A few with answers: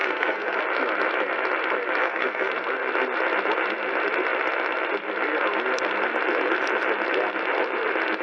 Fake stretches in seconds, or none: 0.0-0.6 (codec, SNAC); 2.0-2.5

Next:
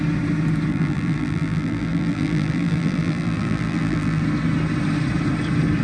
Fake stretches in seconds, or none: 0.7-4.2 (vocoder, BigVGAN v2)

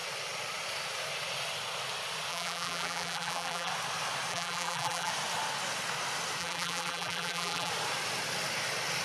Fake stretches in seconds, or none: 2.3-3.7 (vocoder, BigVGAN v2); 4.3-5.1; 6.4-7.7